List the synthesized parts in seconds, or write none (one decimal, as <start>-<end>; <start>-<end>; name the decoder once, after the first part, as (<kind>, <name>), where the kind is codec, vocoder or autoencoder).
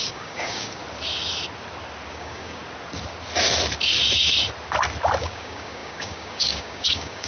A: 0.0-0.8 (codec, DAC); 2.1-2.6; 5.2-7.3